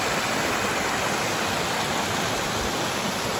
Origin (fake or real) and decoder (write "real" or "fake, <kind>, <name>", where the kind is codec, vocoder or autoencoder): real